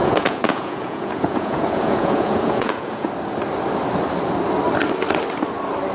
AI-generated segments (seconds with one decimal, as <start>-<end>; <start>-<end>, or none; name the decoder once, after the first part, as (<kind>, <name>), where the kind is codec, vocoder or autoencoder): 0.0-3.1 (vocoder, Vocos)